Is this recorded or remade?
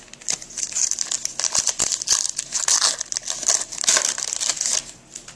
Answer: recorded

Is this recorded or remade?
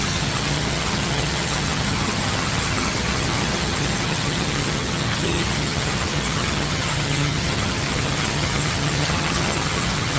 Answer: remade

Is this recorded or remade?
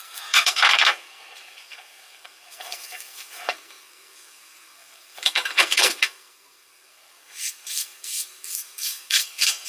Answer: remade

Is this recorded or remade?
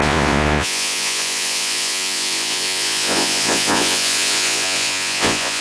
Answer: remade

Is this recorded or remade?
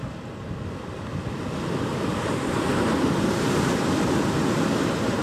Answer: recorded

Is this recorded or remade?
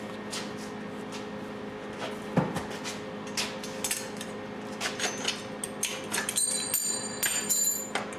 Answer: recorded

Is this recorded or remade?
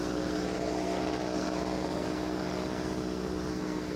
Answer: remade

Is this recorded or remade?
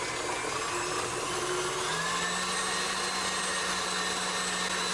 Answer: recorded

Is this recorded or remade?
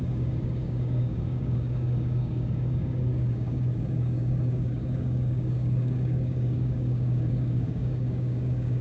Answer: remade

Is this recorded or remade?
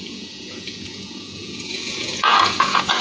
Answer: remade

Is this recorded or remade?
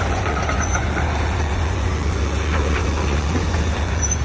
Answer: remade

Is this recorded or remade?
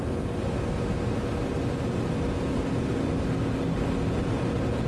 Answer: recorded